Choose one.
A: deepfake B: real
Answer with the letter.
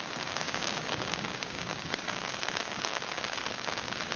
A